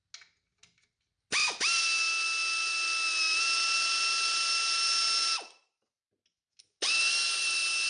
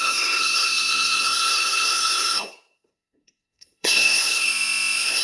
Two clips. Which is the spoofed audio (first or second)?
second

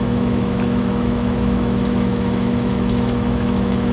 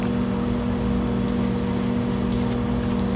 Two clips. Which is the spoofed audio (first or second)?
first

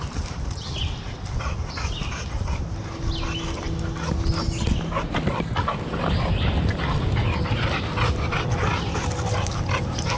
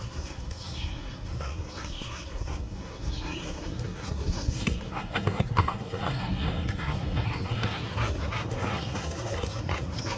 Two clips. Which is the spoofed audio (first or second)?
second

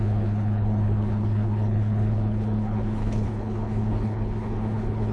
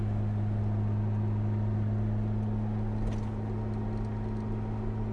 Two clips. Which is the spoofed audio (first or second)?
first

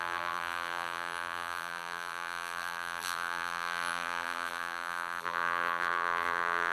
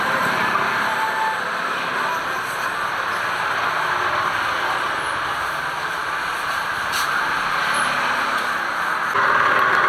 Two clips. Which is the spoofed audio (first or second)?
first